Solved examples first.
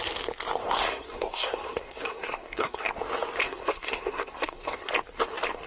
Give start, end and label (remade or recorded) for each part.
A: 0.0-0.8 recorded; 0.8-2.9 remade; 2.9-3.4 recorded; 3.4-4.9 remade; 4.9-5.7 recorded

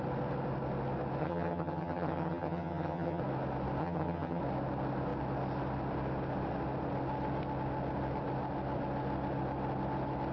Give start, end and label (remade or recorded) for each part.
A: 0.0-1.2 recorded; 1.2-3.2 remade; 3.2-3.8 recorded; 3.8-4.4 remade; 4.4-10.3 recorded

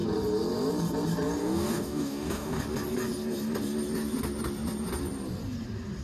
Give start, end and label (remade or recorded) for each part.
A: 0.0-1.4 recorded; 1.4-2.6 remade; 2.6-6.0 recorded

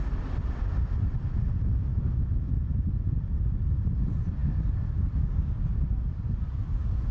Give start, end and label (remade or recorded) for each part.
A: 0.0-1.9 recorded; 1.9-2.5 remade; 2.5-7.1 recorded

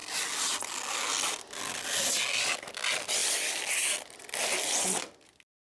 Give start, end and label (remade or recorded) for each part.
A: 0.0-5.6 recorded